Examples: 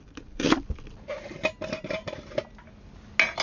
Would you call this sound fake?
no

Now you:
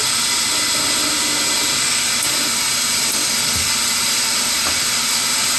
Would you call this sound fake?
no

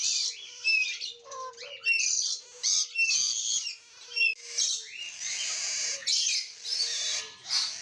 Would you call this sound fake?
no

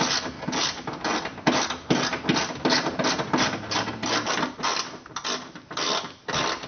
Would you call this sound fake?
no